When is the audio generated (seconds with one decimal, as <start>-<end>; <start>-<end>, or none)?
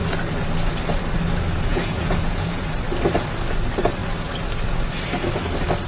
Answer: 1.7-2.7